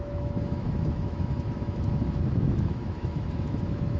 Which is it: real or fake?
fake